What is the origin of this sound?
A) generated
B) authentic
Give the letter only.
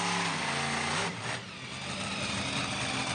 B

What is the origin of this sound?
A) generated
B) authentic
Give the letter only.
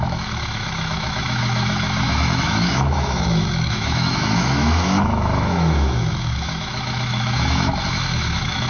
A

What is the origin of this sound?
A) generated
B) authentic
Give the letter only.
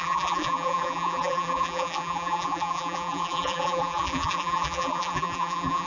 A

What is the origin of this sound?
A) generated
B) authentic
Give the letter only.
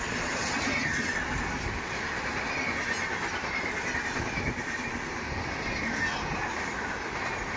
B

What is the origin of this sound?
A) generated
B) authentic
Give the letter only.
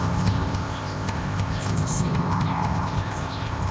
A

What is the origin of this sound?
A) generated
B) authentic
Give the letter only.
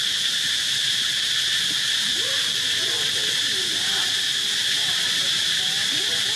B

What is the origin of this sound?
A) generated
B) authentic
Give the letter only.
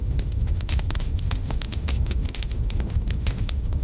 A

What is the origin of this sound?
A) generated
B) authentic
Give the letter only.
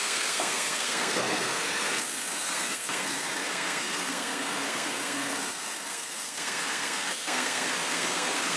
A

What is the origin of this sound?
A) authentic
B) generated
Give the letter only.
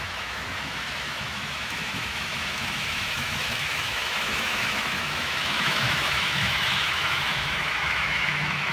B